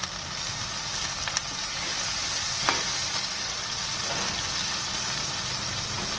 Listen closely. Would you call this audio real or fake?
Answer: real